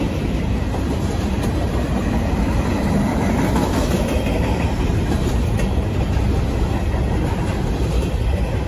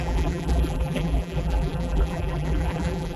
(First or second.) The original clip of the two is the first